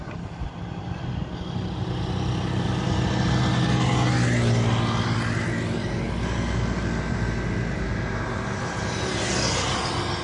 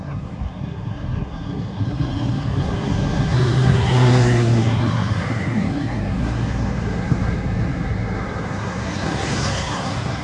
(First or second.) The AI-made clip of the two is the second